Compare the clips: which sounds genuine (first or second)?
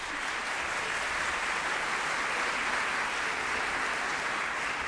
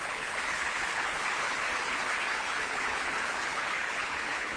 first